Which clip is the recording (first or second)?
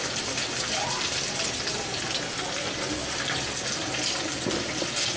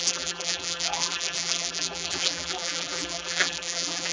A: first